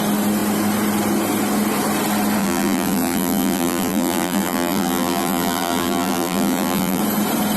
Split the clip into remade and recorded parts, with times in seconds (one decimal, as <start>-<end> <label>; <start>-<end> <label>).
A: 0.0-2.4 recorded; 2.4-7.0 remade; 7.0-7.6 recorded